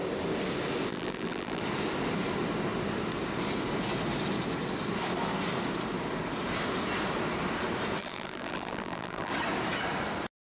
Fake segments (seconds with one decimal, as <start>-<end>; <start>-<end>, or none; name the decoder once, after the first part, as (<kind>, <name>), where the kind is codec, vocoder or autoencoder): 0.9-1.6 (vocoder, BigVGAN v2); 8.0-9.3